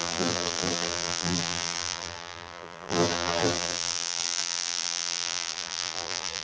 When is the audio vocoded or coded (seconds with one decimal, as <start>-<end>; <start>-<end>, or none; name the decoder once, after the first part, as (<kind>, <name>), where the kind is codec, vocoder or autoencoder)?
0.0-6.4 (vocoder, BigVGAN v2)